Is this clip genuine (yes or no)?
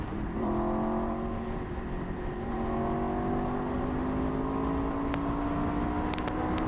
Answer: yes